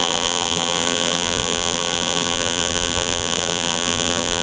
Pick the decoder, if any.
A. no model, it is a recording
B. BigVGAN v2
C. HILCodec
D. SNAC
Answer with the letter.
B